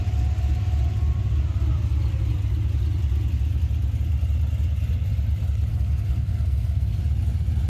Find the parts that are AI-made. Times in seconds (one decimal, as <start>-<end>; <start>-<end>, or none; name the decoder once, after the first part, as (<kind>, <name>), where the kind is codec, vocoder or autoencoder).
5.7-7.0 (codec, SNAC)